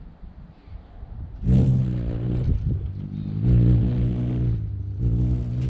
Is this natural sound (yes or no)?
yes